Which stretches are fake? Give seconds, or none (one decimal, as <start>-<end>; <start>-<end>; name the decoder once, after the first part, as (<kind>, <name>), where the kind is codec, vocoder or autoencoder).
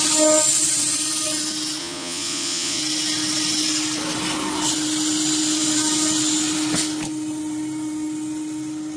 1.8-2.8 (vocoder, Vocos)